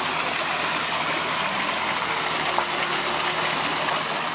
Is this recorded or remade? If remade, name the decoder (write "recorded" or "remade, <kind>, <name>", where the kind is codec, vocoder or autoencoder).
recorded